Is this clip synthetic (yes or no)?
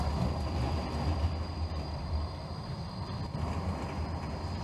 no